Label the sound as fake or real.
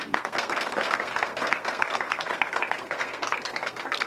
fake